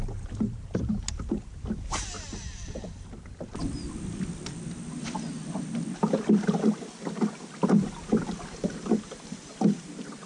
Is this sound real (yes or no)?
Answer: yes